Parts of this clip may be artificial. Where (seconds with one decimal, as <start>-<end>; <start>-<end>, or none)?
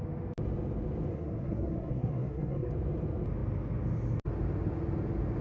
1.1-2.7